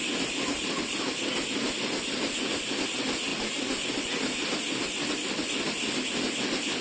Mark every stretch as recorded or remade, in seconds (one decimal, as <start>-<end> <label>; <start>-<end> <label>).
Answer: 0.0-6.8 recorded